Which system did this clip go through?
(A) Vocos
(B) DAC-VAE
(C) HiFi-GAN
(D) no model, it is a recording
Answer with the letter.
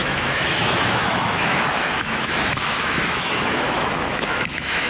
B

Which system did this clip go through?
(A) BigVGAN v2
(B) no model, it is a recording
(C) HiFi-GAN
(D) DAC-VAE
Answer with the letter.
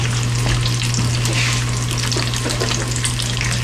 B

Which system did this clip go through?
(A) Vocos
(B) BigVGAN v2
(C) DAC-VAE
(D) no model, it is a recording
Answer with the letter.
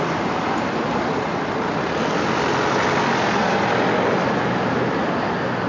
D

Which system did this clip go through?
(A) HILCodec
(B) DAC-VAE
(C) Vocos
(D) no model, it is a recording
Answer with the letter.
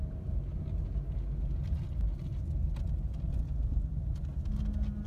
D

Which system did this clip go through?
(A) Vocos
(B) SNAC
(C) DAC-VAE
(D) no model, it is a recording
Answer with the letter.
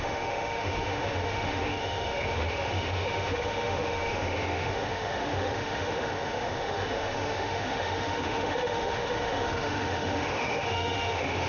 C